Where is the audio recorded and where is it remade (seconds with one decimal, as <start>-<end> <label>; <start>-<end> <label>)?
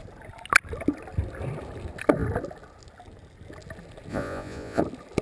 0.0-4.1 recorded; 4.1-4.8 remade; 4.8-5.2 recorded